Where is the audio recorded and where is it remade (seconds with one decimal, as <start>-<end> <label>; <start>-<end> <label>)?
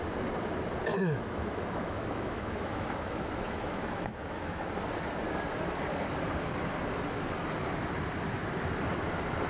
0.0-0.9 recorded; 0.9-4.7 remade; 4.7-9.5 recorded